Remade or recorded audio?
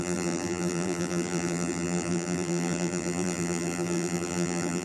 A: remade